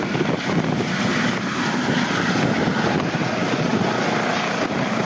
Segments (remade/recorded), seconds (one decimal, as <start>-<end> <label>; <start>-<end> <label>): 0.0-5.0 recorded